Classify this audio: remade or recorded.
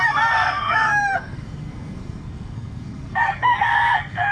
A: remade